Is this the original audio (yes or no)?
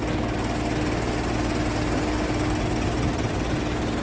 yes